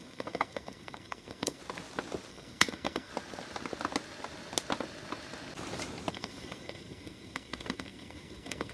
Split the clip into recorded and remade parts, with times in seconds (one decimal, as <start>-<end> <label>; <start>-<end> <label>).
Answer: 0.0-1.6 remade; 1.6-2.3 recorded; 2.3-3.1 remade; 3.1-6.1 recorded; 6.1-8.7 remade